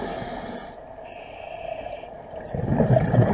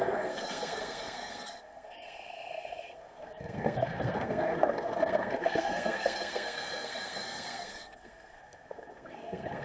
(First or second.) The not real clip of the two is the second